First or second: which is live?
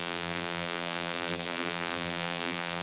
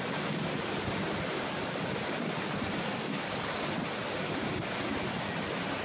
second